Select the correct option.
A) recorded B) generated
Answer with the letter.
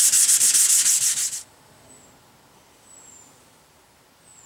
A